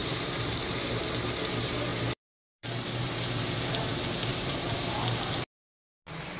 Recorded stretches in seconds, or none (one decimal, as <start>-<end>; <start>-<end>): 0.7-1.9; 3.4-4.3; 5.0-6.4